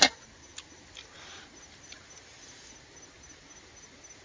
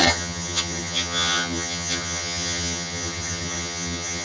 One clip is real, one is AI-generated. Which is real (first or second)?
first